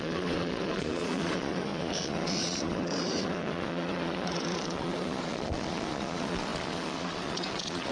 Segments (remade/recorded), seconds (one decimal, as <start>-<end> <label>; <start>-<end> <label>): 0.0-7.9 remade

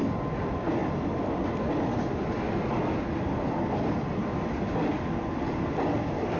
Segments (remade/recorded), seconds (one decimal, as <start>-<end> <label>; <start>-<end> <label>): 0.0-6.4 recorded

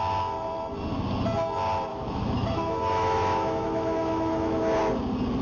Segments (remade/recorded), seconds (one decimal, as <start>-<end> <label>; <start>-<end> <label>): 0.0-1.9 recorded; 1.9-4.8 remade; 4.8-5.4 recorded